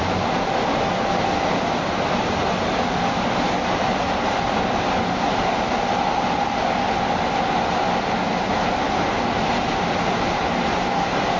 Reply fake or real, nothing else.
real